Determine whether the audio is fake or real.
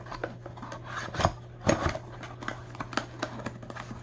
real